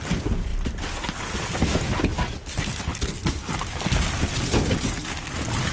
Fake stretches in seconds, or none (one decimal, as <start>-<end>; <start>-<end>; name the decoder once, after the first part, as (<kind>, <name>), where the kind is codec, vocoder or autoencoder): none